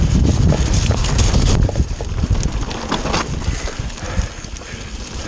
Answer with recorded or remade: recorded